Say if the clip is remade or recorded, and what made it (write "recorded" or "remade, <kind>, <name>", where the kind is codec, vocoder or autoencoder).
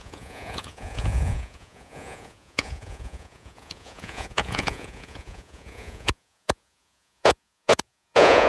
remade, vocoder, Vocos